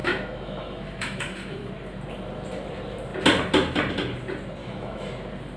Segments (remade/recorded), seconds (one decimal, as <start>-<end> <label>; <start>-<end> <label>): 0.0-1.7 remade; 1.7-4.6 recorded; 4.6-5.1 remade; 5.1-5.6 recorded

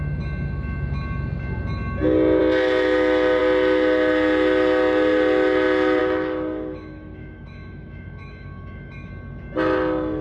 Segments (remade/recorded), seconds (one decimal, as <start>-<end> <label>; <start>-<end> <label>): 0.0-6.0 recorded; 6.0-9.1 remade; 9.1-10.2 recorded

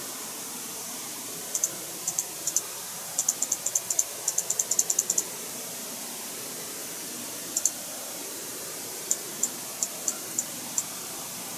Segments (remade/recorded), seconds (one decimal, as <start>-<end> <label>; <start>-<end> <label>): 0.0-3.2 remade; 3.2-5.3 recorded; 5.3-6.0 remade; 6.0-7.3 recorded; 7.3-11.6 remade

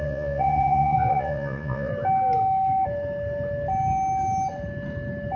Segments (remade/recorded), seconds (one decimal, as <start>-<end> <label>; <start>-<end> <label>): 0.0-1.9 remade; 1.9-5.4 recorded